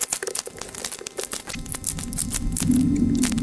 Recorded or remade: recorded